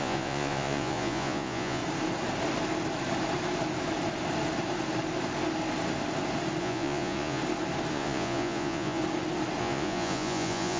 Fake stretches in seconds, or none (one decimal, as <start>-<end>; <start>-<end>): 0.0-1.8; 6.6-7.4; 7.9-9.0; 9.6-10.8